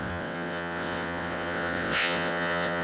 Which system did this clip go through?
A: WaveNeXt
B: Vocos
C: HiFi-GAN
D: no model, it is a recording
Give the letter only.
A